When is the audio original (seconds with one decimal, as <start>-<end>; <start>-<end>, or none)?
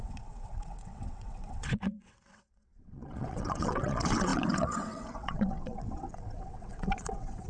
none